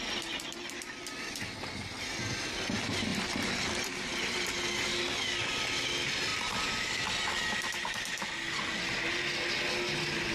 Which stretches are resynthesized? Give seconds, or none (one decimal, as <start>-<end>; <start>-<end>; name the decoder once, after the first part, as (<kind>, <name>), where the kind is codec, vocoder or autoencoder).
1.8-2.4 (vocoder, BigVGAN v2); 3.1-4.4; 6.3-7.0